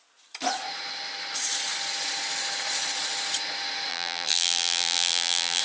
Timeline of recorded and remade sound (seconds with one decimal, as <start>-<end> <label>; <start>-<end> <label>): 0.0-3.9 recorded; 3.9-5.6 remade